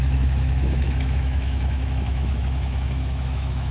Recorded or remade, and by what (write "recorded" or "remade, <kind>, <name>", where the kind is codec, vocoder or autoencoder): remade, autoencoder, DAC-VAE